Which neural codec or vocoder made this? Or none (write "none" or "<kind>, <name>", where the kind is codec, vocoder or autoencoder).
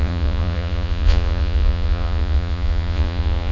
vocoder, Vocos